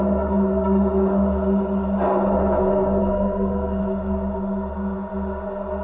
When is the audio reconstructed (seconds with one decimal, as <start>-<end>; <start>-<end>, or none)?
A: 3.0-3.8